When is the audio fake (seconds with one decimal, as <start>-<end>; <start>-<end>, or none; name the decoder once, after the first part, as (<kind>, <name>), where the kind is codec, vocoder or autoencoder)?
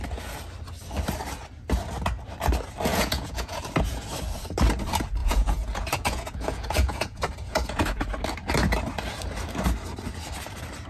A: 2.9-3.7 (vocoder, Vocos); 5.2-8.0